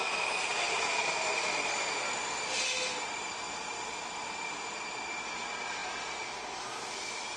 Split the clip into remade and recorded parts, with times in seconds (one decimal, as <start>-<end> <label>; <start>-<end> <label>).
0.0-7.4 recorded